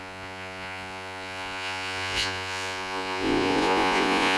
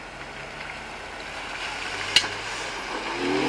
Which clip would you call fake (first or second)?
first